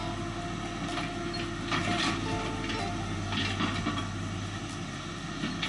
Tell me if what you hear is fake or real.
real